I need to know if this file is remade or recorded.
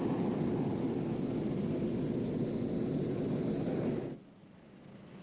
recorded